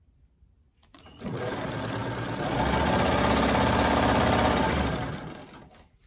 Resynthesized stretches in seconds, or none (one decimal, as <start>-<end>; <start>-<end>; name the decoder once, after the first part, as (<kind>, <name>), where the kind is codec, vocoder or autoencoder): 0.9-1.4 (vocoder, Vocos)